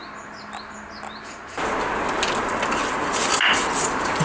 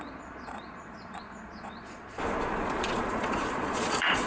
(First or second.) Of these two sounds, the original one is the first